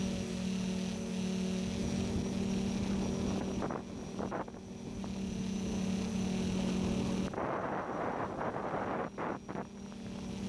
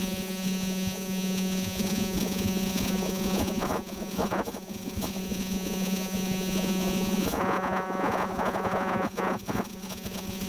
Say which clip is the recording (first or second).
first